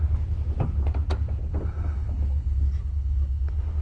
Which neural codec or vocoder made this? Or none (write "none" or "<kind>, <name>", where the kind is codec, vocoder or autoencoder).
none